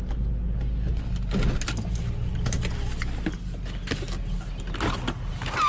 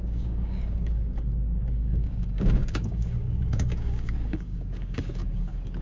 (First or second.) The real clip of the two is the first